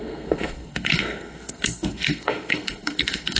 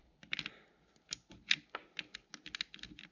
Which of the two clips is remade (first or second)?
first